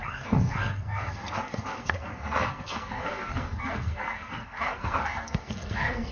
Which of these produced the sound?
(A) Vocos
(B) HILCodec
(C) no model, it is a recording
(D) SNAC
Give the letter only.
D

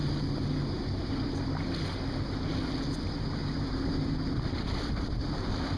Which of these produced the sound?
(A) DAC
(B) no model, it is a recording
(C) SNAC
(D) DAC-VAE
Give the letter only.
B